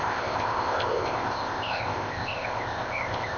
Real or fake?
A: fake